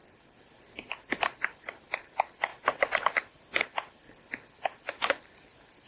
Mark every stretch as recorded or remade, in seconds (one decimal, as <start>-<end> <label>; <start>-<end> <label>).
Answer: 0.0-5.9 recorded